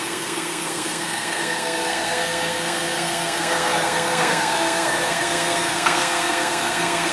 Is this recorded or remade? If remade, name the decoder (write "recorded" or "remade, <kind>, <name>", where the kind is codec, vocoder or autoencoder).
remade, codec, SNAC